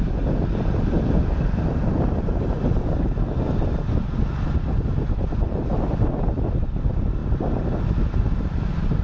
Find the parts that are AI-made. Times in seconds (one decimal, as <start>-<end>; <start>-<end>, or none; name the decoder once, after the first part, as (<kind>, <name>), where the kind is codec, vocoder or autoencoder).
none